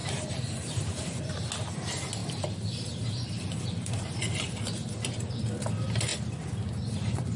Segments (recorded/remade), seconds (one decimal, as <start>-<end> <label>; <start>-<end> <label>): 0.0-1.5 remade; 1.5-2.2 recorded; 2.2-4.1 remade; 4.1-7.4 recorded